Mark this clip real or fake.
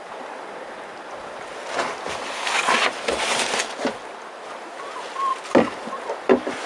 real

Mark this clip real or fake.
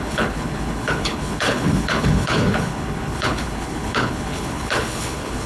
fake